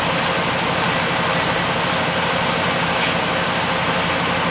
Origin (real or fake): real